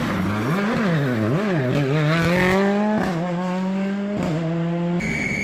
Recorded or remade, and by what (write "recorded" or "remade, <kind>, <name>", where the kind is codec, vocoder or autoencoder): recorded